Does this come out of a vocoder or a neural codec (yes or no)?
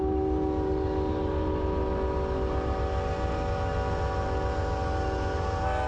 no